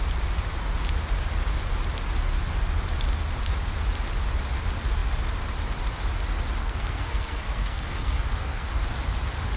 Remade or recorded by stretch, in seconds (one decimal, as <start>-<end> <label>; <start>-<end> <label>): 0.0-6.6 recorded; 6.6-8.7 remade; 8.7-9.6 recorded